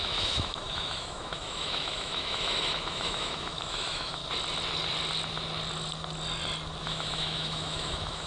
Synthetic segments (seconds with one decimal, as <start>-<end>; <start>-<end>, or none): 0.0-4.2; 6.8-8.3